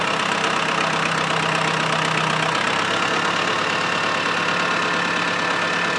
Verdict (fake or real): real